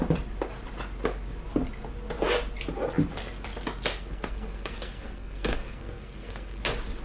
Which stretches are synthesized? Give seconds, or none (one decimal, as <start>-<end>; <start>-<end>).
3.9-6.6